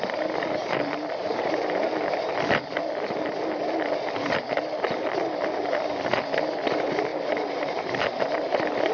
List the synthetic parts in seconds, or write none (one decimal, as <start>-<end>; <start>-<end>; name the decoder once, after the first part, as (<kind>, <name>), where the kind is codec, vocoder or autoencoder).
none